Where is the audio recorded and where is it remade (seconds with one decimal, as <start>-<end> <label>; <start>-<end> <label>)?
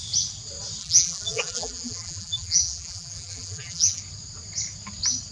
0.0-0.8 recorded; 0.8-4.0 remade; 4.0-5.3 recorded